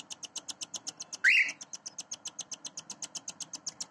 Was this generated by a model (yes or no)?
no